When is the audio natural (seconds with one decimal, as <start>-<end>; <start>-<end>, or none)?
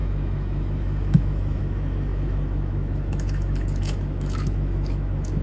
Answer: none